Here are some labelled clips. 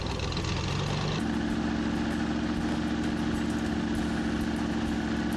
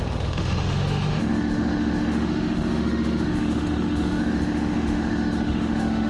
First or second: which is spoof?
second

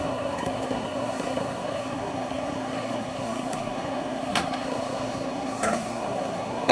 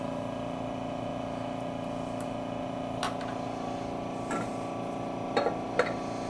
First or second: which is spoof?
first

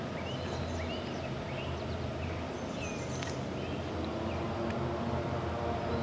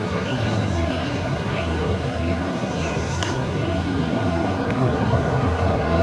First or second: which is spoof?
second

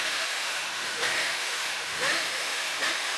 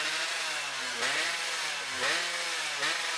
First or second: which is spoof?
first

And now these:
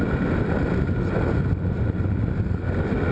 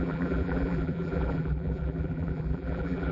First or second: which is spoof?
second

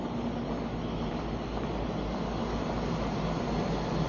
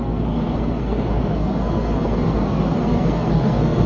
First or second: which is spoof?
second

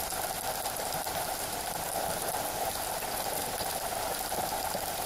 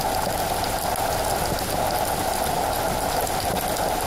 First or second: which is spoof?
first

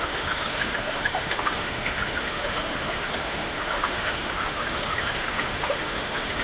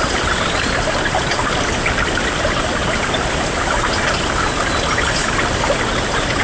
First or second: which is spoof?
first